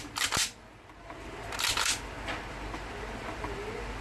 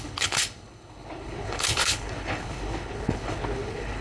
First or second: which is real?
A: first